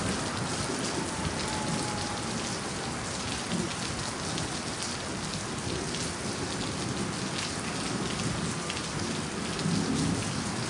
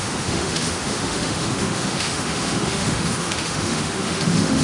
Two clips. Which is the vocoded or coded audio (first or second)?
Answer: second